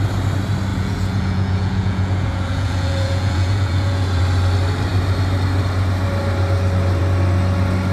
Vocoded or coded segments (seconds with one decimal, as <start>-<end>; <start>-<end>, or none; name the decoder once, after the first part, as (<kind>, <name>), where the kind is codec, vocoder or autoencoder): 0.7-4.2 (vocoder, Vocos)